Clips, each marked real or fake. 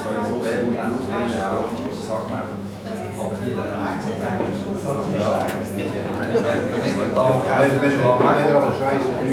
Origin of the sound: fake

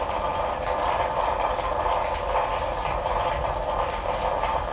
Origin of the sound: real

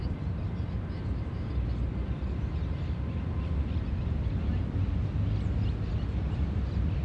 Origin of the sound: real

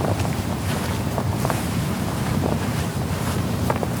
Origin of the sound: fake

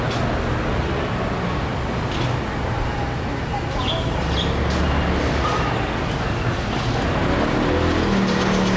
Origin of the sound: real